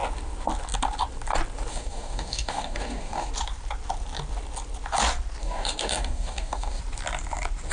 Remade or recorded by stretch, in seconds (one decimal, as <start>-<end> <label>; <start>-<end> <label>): 0.0-1.7 recorded; 1.7-3.3 remade; 3.3-5.4 recorded; 5.4-6.8 remade; 6.8-7.7 recorded